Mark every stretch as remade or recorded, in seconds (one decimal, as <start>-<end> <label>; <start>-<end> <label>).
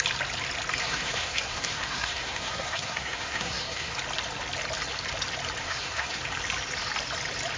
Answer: 0.0-0.8 recorded; 0.8-3.9 remade; 3.9-5.6 recorded; 5.6-6.2 remade; 6.2-7.6 recorded